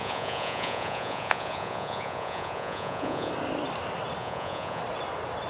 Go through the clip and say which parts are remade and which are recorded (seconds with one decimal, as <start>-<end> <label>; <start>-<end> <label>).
0.0-3.3 remade; 3.3-4.2 recorded; 4.2-4.8 remade; 4.8-5.5 recorded